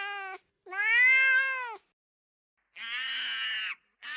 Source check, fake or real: real